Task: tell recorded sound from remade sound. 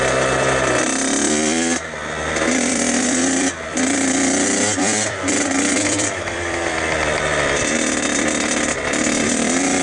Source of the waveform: remade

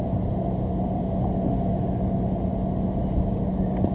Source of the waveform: recorded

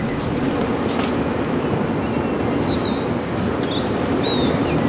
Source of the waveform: recorded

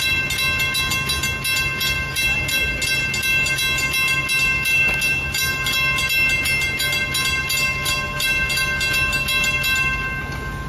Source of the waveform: recorded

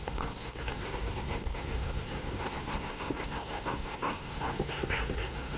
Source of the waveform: remade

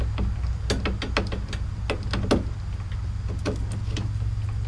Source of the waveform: recorded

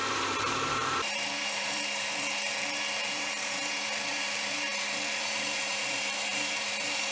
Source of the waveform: remade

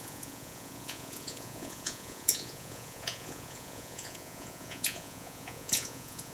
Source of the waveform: remade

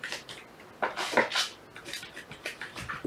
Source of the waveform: recorded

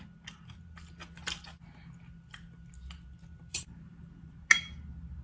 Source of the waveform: recorded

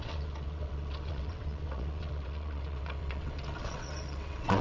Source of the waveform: remade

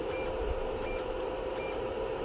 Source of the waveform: recorded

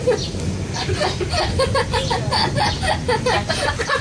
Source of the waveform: recorded